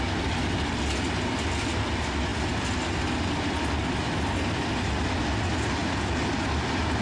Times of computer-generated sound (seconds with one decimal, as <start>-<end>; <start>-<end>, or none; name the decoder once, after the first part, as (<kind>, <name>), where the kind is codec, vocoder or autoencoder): none